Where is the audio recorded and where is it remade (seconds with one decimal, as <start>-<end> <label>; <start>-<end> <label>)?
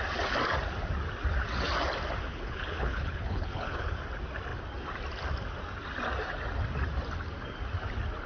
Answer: 0.0-2.3 recorded; 2.3-4.0 remade; 4.0-8.3 recorded